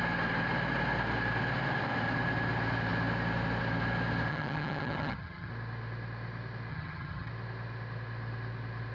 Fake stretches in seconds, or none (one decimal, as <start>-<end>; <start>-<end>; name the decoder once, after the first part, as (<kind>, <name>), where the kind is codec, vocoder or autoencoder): 4.3-5.5 (vocoder, HiFi-GAN); 6.7-7.3